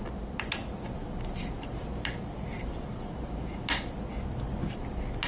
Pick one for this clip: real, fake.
real